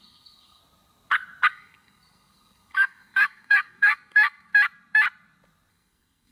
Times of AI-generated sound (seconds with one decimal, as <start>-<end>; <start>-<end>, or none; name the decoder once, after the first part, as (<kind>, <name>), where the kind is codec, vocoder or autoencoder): 0.0-0.6 (codec, SNAC); 1.5-4.5; 5.7-6.3